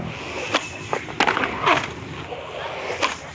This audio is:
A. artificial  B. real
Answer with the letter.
B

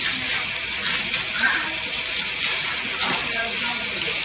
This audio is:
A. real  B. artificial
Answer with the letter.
A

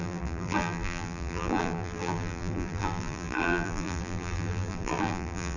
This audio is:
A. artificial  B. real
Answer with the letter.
A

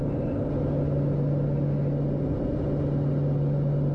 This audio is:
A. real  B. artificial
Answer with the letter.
A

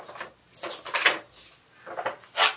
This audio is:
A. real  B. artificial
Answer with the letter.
A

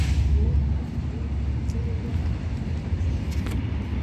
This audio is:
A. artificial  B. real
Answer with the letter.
B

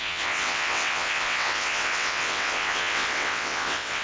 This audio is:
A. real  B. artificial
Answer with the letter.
B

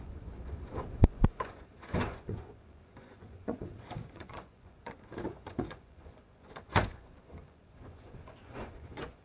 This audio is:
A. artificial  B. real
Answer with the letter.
A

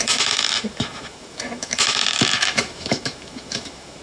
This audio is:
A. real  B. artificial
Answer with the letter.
B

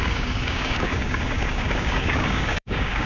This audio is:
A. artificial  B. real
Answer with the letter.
A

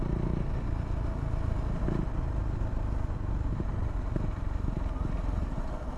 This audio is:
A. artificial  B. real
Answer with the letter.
B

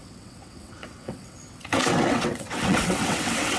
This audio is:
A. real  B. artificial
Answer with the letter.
B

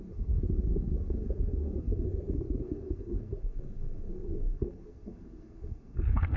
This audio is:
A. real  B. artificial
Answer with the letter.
B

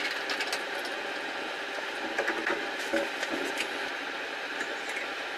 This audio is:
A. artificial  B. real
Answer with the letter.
B